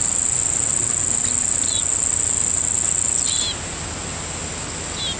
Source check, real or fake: real